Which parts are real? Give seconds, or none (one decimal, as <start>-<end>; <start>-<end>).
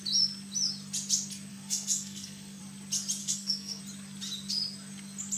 0.0-1.5; 2.6-3.2; 3.8-5.4